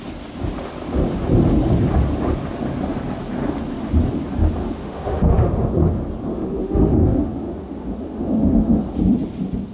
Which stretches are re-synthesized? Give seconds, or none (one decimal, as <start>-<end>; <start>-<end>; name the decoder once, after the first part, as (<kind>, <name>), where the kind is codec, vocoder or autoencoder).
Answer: 4.6-5.7 (autoencoder, DAC-VAE); 6.3-8.8